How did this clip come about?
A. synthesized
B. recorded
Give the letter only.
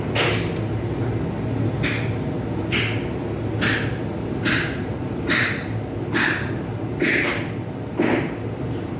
B